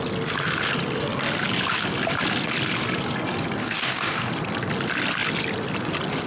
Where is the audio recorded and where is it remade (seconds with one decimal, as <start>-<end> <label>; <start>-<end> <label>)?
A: 0.0-3.6 recorded; 3.6-4.3 remade; 4.3-6.3 recorded